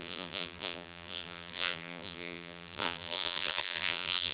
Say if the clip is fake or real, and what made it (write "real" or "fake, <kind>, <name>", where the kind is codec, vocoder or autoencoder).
fake, vocoder, BigVGAN v2